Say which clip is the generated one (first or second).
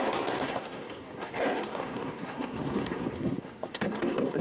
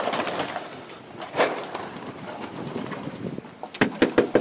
first